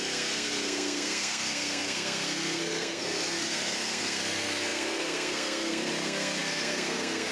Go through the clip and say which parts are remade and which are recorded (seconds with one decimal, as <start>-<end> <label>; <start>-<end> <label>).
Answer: 0.0-7.3 remade